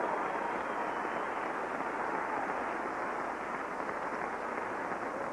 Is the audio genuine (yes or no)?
yes